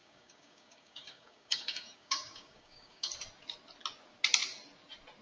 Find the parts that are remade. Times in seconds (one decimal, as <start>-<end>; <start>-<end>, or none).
0.0-3.1